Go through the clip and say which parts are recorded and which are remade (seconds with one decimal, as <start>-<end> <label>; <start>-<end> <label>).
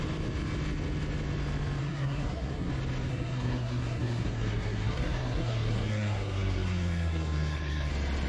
0.0-1.8 recorded; 1.8-2.7 remade; 2.7-3.1 recorded; 3.1-7.9 remade; 7.9-8.3 recorded